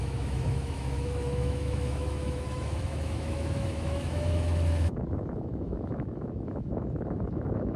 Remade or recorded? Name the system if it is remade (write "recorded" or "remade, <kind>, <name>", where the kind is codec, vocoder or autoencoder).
remade, autoencoder, DAC-VAE